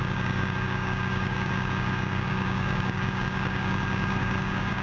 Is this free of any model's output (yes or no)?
no